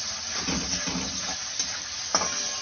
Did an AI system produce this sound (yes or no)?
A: no